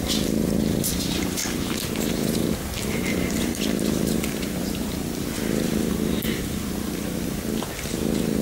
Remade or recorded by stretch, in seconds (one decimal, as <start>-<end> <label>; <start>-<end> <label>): 0.0-8.4 recorded